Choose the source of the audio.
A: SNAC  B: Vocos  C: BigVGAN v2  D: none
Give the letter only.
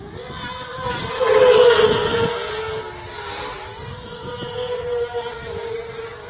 D